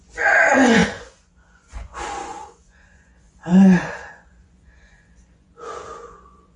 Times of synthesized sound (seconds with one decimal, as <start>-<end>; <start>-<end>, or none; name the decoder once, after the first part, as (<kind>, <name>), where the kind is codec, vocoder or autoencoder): 0.0-6.6 (vocoder, Vocos)

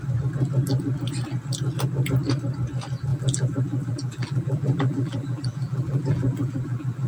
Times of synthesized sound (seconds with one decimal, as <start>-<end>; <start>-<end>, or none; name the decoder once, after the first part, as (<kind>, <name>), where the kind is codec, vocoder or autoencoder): 3.1-7.1 (vocoder, BigVGAN v2)

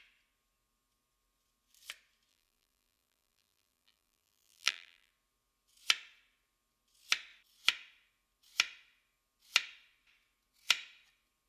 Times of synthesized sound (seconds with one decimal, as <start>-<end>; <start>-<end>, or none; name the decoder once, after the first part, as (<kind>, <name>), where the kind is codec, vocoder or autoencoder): 2.3-5.1 (vocoder, BigVGAN v2)

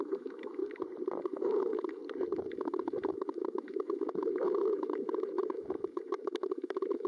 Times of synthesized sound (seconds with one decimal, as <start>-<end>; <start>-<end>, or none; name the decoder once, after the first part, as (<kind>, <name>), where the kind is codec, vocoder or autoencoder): 0.0-0.6 (autoencoder, DAC-VAE); 1.2-2.0; 2.5-7.1

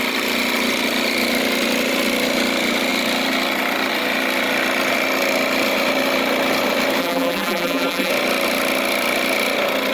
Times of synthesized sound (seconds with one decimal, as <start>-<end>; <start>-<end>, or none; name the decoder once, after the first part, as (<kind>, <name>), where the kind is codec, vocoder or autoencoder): 7.0-8.1 (vocoder, BigVGAN v2)